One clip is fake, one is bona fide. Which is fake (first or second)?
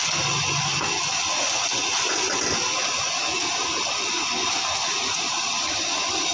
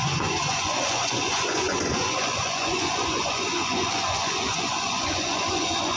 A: second